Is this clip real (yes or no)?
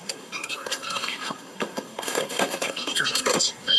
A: no